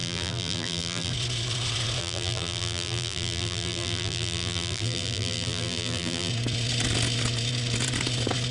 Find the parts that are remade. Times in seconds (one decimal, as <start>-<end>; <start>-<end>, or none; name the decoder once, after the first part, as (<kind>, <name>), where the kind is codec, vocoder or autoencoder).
0.0-1.1 (vocoder, BigVGAN v2); 2.0-6.3

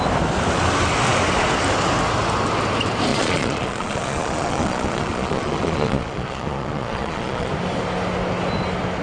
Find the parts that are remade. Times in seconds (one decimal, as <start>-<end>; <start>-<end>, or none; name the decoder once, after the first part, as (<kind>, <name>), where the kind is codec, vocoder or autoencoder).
3.1-7.5 (vocoder, Vocos)

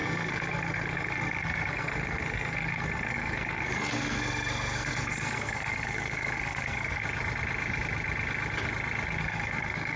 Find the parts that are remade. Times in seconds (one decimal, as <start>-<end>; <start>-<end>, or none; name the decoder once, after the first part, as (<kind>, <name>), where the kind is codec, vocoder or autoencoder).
0.0-7.0 (codec, SNAC); 9.2-10.0

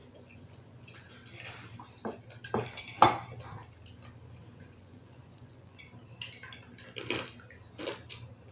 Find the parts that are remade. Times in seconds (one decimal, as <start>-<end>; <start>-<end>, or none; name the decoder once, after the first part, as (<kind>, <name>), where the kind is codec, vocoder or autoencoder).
0.0-1.1 (vocoder, Vocos); 4.4-5.8

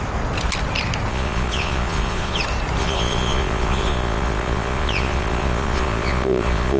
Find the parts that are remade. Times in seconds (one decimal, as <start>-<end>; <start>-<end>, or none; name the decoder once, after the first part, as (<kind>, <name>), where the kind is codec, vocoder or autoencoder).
1.1-2.4 (vocoder, Vocos); 2.8-6.8

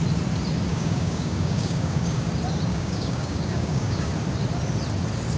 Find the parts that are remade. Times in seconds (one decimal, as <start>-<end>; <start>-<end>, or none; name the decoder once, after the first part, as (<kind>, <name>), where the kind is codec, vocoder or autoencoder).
0.7-2.3 (codec, DAC); 2.7-4.1

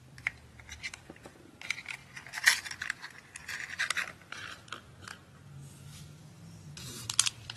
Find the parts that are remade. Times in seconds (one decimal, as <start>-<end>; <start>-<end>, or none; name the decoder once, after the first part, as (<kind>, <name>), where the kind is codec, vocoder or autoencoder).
0.0-2.0 (vocoder, BigVGAN v2); 2.8-3.4; 4.0-7.6